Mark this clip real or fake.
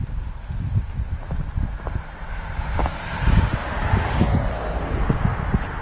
real